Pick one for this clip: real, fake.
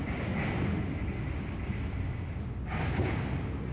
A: real